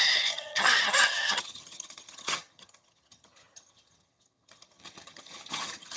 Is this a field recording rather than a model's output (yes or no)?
no